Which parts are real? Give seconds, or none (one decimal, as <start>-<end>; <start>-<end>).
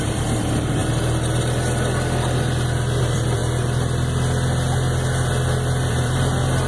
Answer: 0.8-3.0; 3.4-5.9